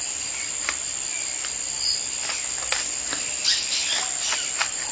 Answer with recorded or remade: recorded